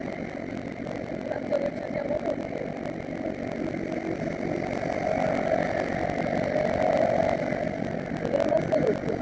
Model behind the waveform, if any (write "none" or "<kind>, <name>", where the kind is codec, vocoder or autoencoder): none